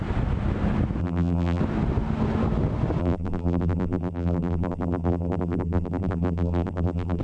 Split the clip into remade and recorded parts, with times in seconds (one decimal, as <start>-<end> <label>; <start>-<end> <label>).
0.0-1.0 recorded; 1.0-1.6 remade; 1.6-3.0 recorded; 3.0-7.2 remade